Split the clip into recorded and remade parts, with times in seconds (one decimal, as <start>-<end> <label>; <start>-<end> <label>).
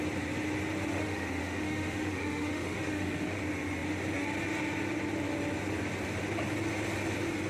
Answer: 0.0-0.9 recorded; 0.9-3.4 remade; 3.4-7.5 recorded